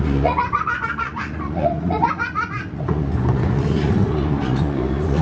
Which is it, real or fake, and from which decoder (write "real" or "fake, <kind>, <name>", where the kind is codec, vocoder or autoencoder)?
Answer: fake, vocoder, Vocos